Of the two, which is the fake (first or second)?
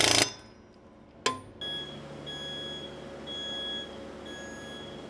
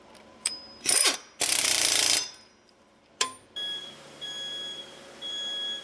second